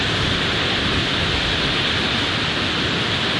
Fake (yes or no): no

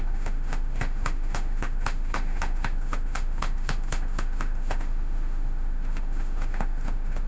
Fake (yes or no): yes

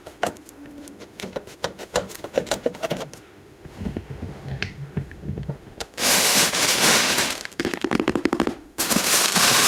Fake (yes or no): yes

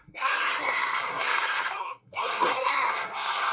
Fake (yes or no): yes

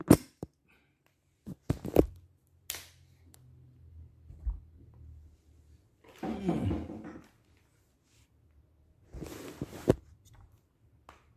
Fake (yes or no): no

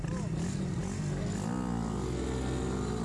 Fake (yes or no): no